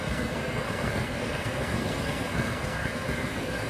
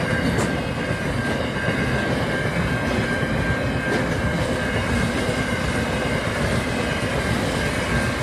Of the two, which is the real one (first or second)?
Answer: second